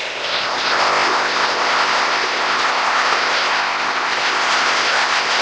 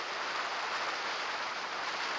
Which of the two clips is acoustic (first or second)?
second